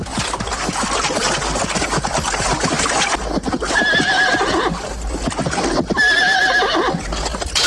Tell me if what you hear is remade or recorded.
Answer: recorded